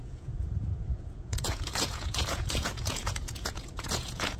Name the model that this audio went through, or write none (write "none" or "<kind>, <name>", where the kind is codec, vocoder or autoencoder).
vocoder, Vocos